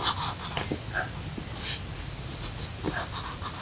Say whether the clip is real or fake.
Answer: real